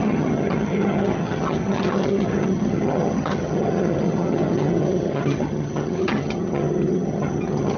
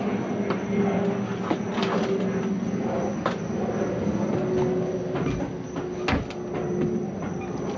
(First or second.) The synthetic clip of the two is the first